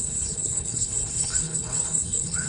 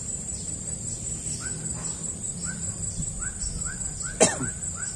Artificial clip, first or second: first